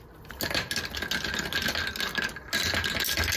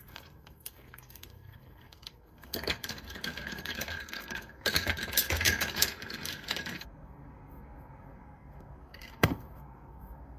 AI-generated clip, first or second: second